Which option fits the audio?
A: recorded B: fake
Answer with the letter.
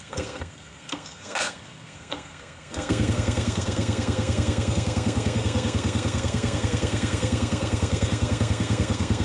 B